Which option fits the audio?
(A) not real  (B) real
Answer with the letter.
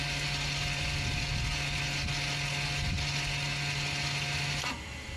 B